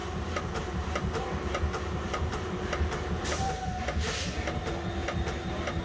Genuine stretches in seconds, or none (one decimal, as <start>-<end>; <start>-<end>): 3.5-5.0